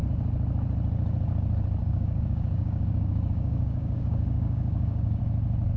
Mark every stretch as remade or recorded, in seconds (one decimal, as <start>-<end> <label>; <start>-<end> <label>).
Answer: 0.0-1.8 recorded; 1.8-5.2 remade; 5.2-5.8 recorded